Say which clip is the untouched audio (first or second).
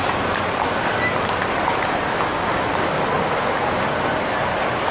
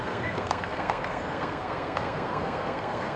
first